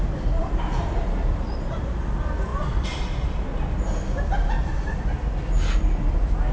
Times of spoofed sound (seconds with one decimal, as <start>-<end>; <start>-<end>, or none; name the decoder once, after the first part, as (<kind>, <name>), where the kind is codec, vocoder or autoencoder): none